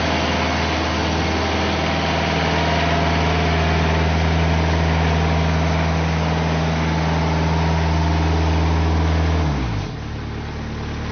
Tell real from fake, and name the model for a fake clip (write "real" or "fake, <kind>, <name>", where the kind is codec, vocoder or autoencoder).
real